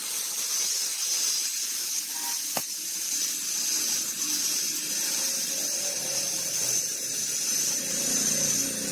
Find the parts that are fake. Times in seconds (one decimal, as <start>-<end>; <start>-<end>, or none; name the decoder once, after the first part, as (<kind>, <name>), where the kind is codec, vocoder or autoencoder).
4.5-8.9 (vocoder, BigVGAN v2)